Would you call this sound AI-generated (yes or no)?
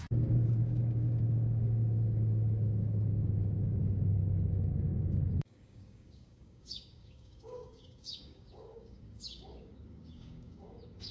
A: yes